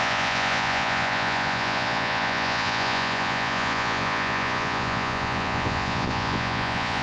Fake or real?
fake